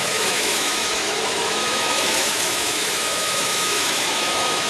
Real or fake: fake